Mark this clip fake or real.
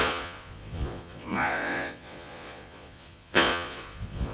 fake